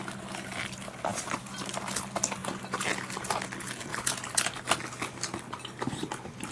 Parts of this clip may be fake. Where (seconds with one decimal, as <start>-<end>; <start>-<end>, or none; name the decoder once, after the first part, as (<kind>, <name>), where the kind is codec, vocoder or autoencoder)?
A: none